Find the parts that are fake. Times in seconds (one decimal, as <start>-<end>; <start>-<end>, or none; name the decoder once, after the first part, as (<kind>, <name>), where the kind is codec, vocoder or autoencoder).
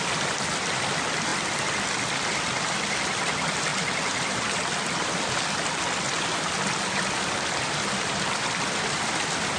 none